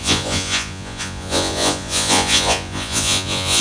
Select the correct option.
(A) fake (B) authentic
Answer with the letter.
A